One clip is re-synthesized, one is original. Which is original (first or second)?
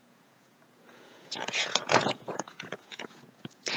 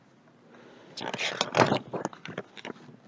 second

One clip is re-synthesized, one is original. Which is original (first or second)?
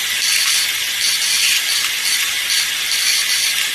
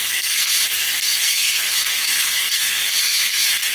first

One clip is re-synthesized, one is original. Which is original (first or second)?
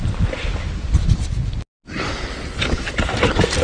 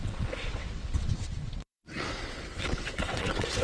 first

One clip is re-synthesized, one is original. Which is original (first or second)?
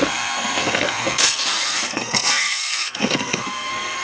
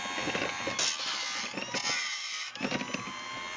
second